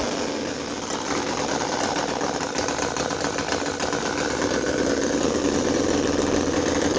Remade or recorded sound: recorded